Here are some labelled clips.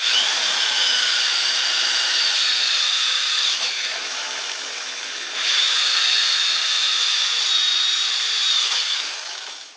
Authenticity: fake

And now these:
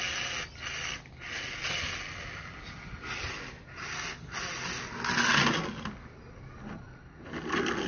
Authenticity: real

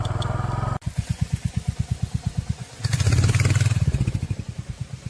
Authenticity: real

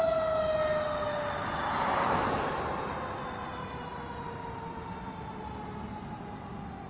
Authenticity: real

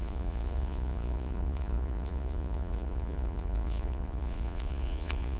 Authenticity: fake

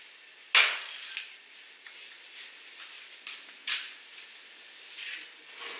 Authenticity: real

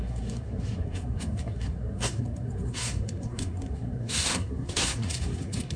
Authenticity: fake